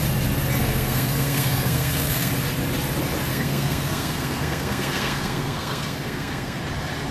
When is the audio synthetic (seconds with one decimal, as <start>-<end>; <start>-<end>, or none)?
0.6-2.3; 3.3-6.6